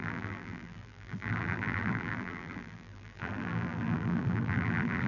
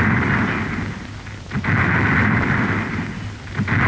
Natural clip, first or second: second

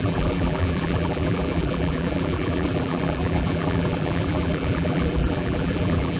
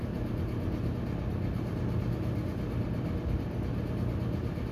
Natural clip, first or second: second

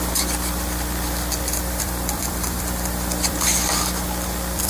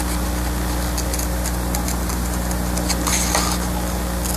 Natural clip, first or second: second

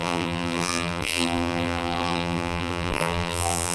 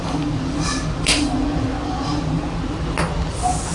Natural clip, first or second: second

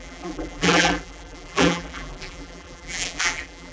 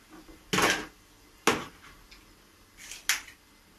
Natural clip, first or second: second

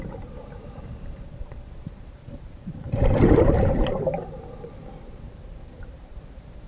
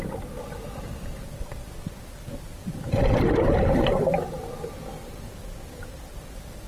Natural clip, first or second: second